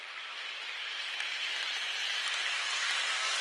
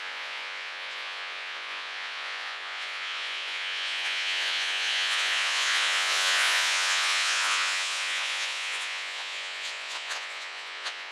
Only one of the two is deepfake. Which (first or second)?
second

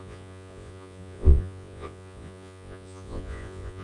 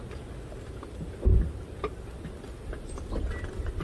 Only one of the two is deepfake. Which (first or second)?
first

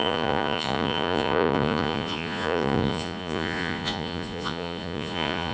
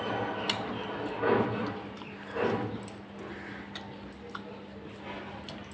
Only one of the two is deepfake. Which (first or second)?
first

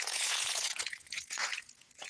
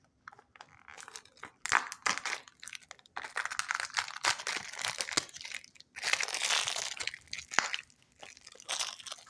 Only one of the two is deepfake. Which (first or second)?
first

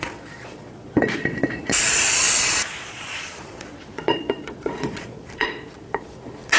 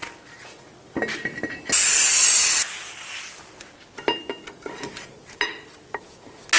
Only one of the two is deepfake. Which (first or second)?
first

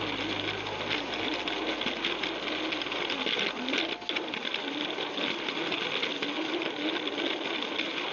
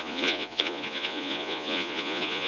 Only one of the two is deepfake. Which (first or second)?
second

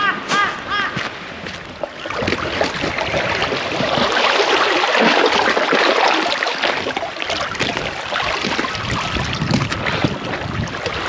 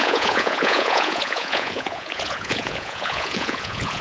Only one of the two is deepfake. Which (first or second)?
second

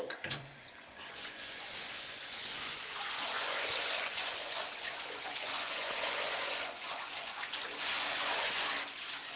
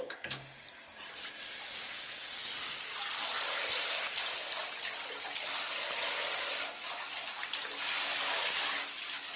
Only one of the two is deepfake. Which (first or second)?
first